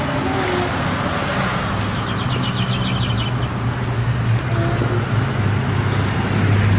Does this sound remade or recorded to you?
recorded